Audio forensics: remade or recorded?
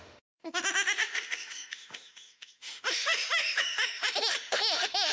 remade